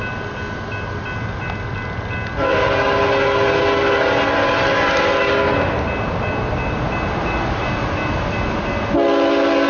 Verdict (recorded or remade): recorded